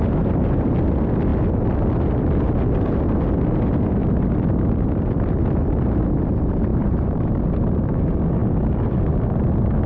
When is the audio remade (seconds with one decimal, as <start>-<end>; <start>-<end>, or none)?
6.7-7.3